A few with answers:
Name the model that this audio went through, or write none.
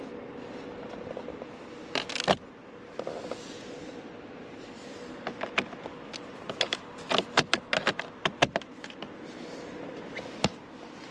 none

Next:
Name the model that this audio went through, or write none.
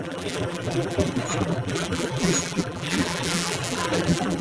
vocoder, BigVGAN v2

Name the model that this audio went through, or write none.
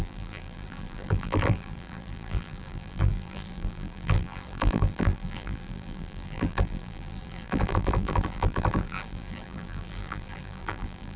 vocoder, BigVGAN v2